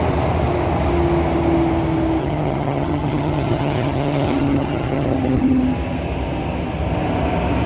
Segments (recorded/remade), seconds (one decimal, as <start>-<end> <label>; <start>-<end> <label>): 0.0-2.2 recorded; 2.2-5.6 remade; 5.6-7.7 recorded